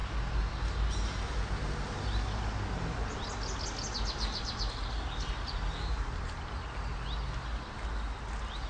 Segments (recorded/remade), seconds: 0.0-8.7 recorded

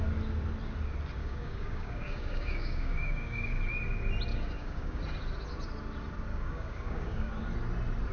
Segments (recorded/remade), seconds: 0.0-1.2 recorded; 1.2-3.6 remade; 3.6-4.3 recorded; 4.3-5.0 remade; 5.0-6.3 recorded; 6.3-7.3 remade; 7.3-8.1 recorded

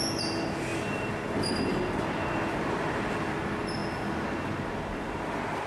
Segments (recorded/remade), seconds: 0.0-5.7 recorded

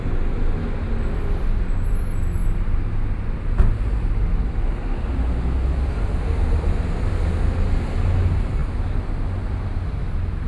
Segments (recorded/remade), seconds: 0.0-10.5 recorded

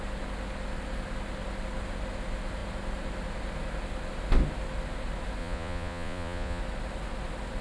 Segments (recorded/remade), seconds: 0.0-5.4 recorded; 5.4-6.6 remade; 6.6-7.6 recorded

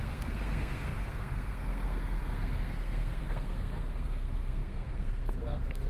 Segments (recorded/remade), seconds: 0.0-5.9 remade